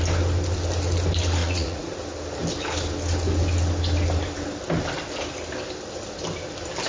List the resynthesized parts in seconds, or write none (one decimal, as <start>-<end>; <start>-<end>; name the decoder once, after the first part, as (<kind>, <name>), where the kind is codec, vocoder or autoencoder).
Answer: 1.4-1.9 (vocoder, Vocos)